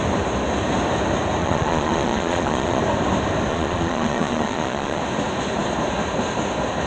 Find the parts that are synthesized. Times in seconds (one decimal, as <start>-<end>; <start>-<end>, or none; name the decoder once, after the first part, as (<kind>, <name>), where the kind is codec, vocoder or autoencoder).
1.4-2.8 (vocoder, Vocos); 3.5-5.0